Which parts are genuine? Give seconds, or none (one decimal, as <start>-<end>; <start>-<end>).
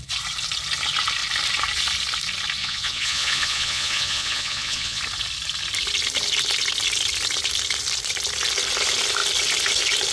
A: 0.0-2.6; 5.0-10.1